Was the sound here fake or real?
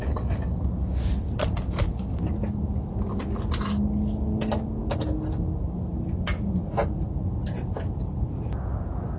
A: real